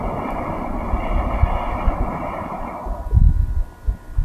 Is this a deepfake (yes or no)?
no